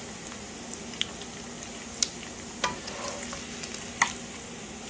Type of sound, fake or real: real